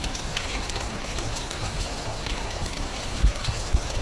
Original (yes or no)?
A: no